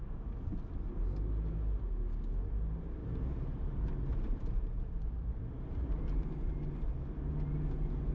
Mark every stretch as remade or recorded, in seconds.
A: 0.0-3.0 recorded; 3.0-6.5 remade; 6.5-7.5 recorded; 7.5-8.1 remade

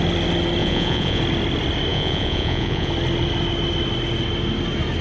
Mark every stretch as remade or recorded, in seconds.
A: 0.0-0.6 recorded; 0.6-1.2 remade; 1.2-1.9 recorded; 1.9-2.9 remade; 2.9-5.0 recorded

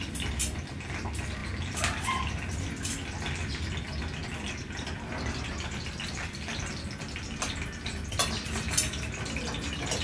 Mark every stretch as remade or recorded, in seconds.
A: 0.0-10.0 recorded

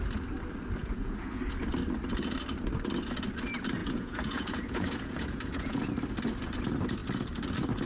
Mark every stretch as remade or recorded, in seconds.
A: 0.0-0.8 recorded; 0.8-1.4 remade; 1.4-3.8 recorded; 3.8-5.9 remade; 5.9-7.9 recorded

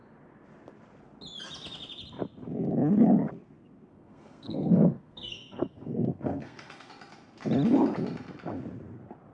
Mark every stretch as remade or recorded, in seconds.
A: 0.0-3.9 recorded; 3.9-6.9 remade; 6.9-9.3 recorded

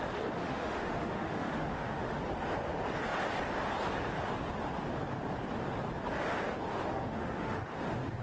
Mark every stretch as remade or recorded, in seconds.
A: 0.0-0.4 recorded; 0.4-2.2 remade; 2.2-6.9 recorded; 6.9-7.6 remade; 7.6-8.2 recorded

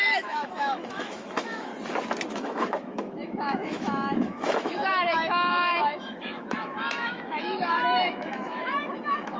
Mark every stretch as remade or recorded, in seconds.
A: 0.0-1.7 remade; 1.7-2.3 recorded; 2.3-9.4 remade

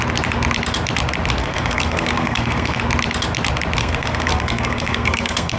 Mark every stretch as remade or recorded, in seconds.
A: 0.0-1.4 recorded; 1.4-2.8 remade; 2.8-3.8 recorded; 3.8-5.6 remade